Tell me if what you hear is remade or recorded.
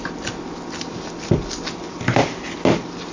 recorded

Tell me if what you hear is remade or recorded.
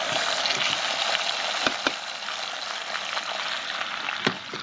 recorded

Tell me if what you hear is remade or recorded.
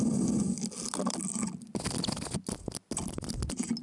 recorded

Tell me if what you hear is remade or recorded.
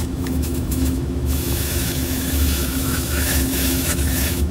remade